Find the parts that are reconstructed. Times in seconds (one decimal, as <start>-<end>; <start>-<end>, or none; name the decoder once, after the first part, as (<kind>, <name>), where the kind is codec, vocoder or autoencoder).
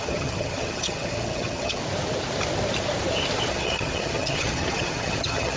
0.0-1.8 (vocoder, HiFi-GAN); 3.5-5.6